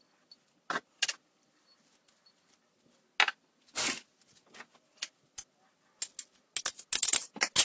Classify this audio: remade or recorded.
recorded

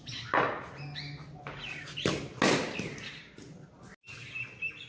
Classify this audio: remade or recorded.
recorded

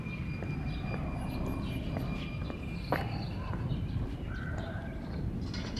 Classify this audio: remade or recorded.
recorded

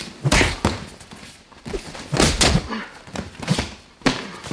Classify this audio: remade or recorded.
recorded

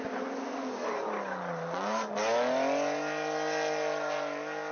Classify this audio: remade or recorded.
recorded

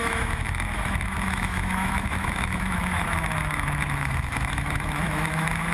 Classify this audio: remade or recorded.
remade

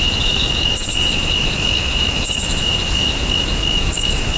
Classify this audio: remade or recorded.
remade